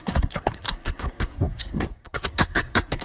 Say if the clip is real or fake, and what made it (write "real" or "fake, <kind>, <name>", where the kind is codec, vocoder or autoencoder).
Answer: fake, codec, SNAC